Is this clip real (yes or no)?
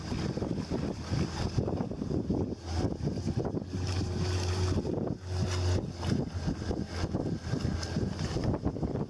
yes